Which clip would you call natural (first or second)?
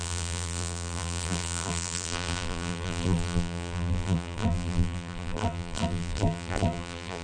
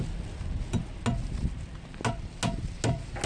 second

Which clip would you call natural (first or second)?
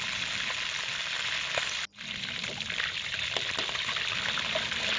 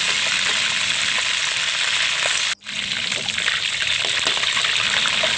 second